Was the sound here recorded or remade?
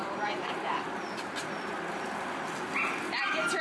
recorded